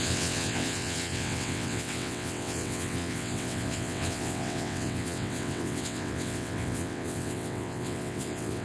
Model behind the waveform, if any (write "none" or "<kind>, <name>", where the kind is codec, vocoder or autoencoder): vocoder, WaveNeXt